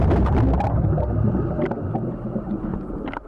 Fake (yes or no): no